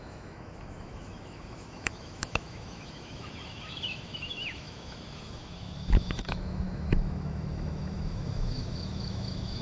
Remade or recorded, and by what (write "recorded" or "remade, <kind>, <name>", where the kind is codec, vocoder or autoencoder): remade, autoencoder, DAC-VAE